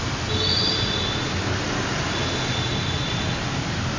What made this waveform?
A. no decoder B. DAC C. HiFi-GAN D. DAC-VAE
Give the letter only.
A